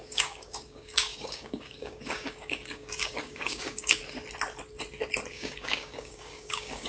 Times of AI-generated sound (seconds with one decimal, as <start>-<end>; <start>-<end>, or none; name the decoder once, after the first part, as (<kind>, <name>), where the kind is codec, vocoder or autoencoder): 0.0-4.0 (codec, DAC); 5.3-6.9